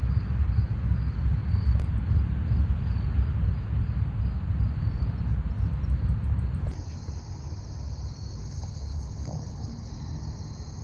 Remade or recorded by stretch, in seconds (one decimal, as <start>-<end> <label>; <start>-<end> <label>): 0.0-8.4 recorded; 8.4-9.9 remade; 9.9-10.8 recorded